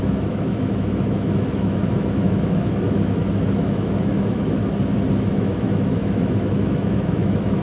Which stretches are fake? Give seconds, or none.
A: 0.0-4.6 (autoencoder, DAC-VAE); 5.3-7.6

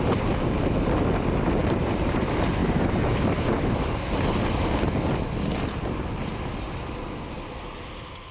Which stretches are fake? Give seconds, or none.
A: 1.6-2.2 (vocoder, BigVGAN v2); 2.6-3.7

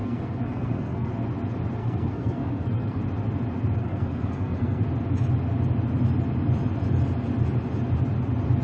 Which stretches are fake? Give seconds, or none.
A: 0.0-1.1 (codec, SNAC); 1.8-3.0; 3.8-4.8

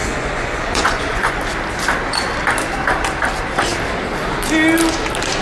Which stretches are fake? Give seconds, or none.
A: 0.0-1.4 (vocoder, Vocos)

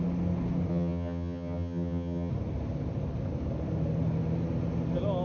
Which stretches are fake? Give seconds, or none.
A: 0.7-2.3 (vocoder, HiFi-GAN)

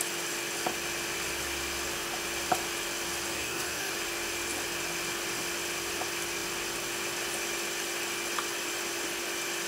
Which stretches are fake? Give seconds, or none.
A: 3.3-3.9 (codec, DAC)